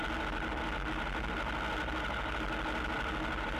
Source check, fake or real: real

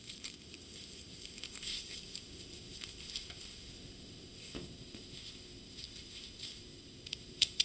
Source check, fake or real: fake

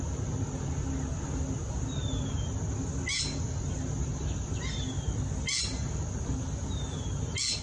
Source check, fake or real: real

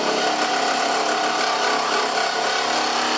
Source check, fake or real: real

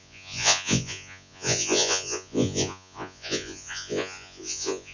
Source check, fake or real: fake